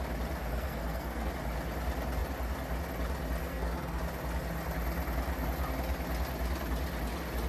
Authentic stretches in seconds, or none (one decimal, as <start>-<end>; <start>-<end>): 0.0-0.5; 1.3-3.4; 4.0-7.5

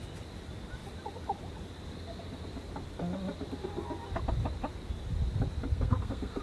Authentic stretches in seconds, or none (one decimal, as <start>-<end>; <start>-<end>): 0.0-5.6

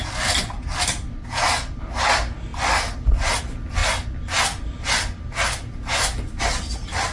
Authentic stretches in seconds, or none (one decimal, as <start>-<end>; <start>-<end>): 0.0-7.1

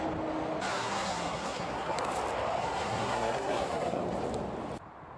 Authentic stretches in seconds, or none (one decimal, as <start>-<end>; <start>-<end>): 0.0-0.7; 2.1-2.6; 4.0-5.2

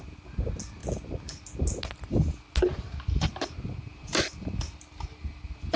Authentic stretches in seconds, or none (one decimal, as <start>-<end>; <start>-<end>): 0.0-2.7; 3.3-3.9; 4.5-5.8

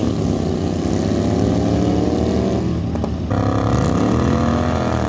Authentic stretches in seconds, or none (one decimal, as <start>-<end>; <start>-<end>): 0.0-5.1